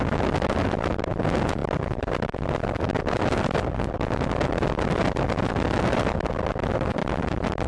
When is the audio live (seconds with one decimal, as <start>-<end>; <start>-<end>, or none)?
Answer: 0.0-7.7